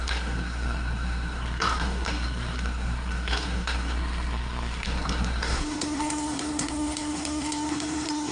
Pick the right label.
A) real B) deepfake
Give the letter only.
B